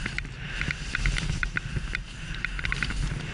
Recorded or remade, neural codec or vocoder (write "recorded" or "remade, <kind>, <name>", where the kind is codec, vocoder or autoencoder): recorded